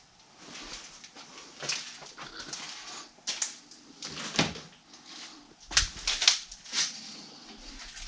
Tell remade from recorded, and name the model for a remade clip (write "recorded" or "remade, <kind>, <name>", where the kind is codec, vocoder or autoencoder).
recorded